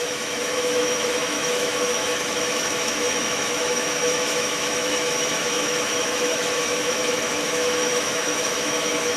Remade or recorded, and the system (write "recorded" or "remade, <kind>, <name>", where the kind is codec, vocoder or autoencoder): remade, autoencoder, DAC-VAE